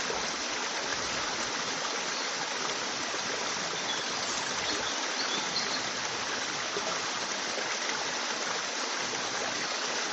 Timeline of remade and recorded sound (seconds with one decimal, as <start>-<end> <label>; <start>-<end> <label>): 0.0-0.9 recorded; 0.9-1.5 remade; 1.5-10.1 recorded